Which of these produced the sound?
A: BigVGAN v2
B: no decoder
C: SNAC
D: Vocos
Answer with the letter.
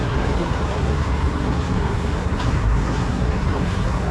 C